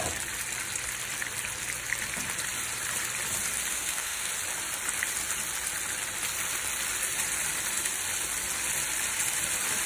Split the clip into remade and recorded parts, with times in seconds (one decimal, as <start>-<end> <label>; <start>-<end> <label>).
0.0-3.7 recorded; 3.7-4.3 remade; 4.3-9.9 recorded